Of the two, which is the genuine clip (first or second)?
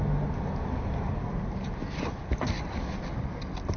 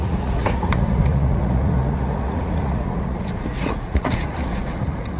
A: first